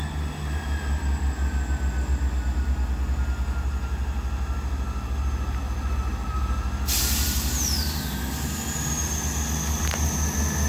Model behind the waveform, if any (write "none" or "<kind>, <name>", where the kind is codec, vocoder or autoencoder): none